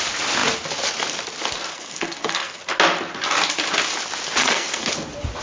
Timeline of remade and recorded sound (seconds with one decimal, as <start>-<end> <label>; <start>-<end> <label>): 0.0-1.7 recorded; 1.7-2.6 remade; 2.6-4.4 recorded; 4.4-4.9 remade; 4.9-5.4 recorded